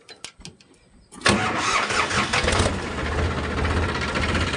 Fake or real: real